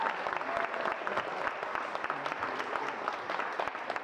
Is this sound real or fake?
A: real